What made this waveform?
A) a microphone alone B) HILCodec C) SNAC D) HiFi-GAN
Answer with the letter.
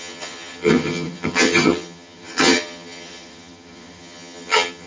D